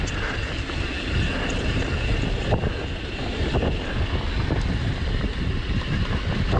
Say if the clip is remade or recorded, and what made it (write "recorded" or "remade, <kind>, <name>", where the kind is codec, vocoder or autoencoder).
recorded